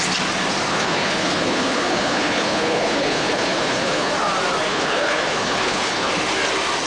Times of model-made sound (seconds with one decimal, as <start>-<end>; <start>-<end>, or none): 0.7-4.1; 4.7-6.1